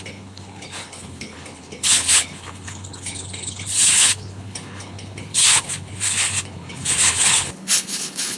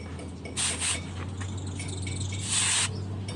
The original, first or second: second